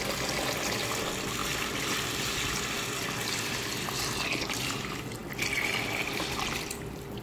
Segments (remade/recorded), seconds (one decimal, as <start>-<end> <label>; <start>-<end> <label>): 0.0-7.2 recorded